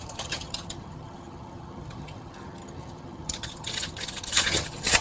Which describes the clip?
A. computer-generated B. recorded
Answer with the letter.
A